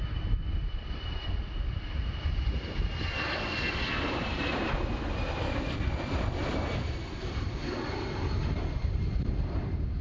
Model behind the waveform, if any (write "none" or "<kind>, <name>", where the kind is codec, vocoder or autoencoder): none